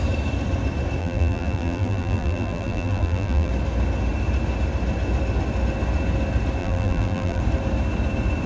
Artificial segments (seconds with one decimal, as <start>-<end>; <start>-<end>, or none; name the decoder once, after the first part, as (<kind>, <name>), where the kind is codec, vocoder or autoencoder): 1.0-3.5 (vocoder, BigVGAN v2); 6.6-7.4